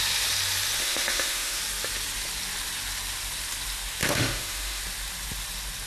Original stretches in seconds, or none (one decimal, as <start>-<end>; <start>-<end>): 0.0-0.8; 1.6-4.0; 4.8-5.9